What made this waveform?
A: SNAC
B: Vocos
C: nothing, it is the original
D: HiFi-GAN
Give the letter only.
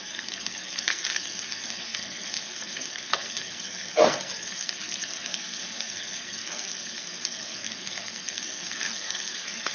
A